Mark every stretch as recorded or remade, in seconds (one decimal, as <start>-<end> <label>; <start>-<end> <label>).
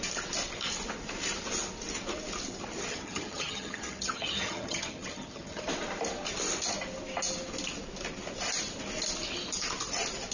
0.0-2.9 recorded; 2.9-5.6 remade; 5.6-10.3 recorded